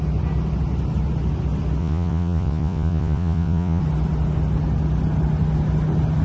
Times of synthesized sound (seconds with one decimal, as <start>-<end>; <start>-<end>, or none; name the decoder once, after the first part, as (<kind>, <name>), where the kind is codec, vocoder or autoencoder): 1.8-3.8 (vocoder, Vocos)